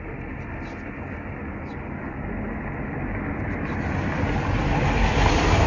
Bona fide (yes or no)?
yes